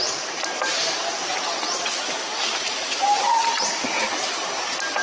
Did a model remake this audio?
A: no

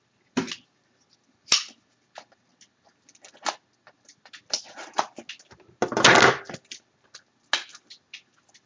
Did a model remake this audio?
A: no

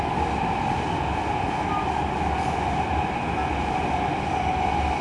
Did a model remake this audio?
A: no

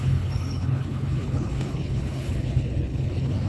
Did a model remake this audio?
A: yes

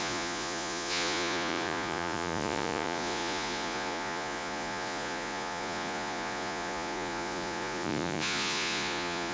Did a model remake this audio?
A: yes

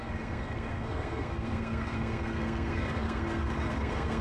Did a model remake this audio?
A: yes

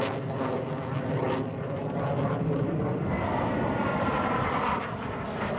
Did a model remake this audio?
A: no